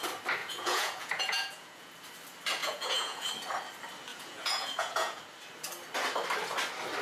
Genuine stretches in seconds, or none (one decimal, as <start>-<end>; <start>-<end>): 0.0-0.4; 1.9-2.6; 3.3-4.1; 5.2-7.0